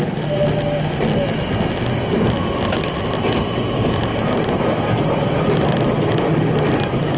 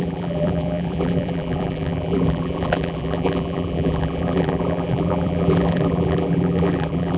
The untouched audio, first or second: first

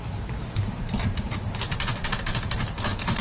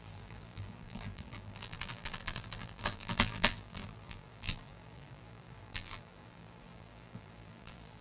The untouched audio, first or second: first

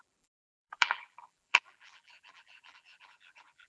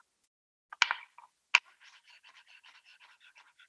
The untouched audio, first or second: second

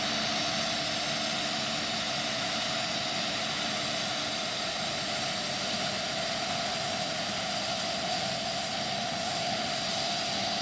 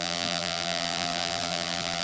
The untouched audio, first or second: first